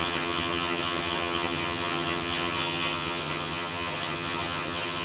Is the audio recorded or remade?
remade